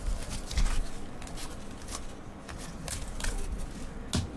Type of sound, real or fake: real